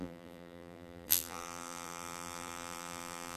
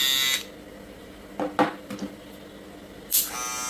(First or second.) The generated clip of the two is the first